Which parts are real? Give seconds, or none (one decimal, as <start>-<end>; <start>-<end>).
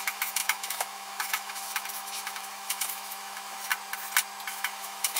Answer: 3.7-4.5